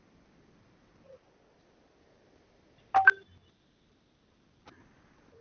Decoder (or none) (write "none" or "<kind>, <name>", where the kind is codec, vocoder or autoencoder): none